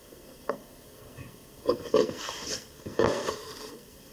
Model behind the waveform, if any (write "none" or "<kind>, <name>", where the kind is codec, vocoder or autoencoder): codec, SNAC